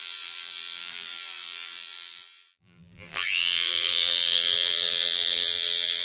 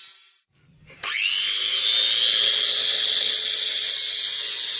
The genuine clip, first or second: second